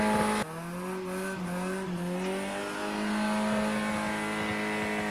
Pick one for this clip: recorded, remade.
recorded